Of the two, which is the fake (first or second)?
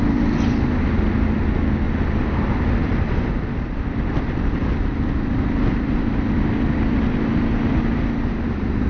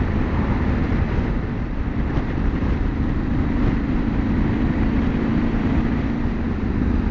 second